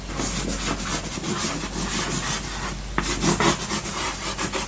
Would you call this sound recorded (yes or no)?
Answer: yes